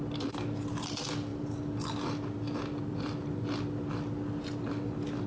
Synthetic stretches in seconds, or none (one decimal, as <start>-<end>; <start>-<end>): none